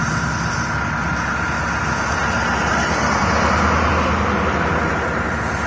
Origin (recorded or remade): recorded